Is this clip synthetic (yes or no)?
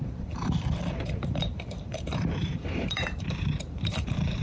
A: yes